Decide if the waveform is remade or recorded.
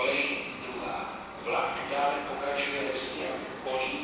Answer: remade